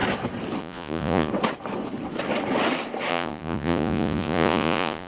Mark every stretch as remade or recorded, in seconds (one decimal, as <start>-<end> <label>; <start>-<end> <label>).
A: 0.0-0.6 recorded; 0.6-1.3 remade; 1.3-3.1 recorded; 3.1-5.1 remade